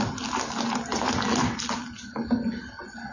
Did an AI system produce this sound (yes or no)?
no